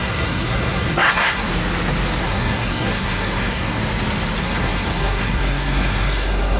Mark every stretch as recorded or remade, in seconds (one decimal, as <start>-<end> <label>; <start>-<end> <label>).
0.0-1.5 remade; 1.5-2.2 recorded; 2.2-3.8 remade; 3.8-4.4 recorded; 4.4-6.6 remade